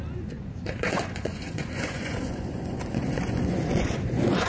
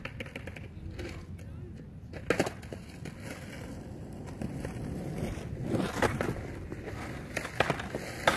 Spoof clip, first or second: first